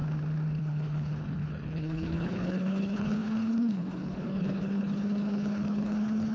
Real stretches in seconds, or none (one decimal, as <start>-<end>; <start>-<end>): 0.0-0.6